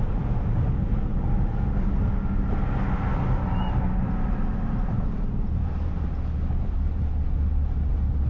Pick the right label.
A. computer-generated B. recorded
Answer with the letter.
B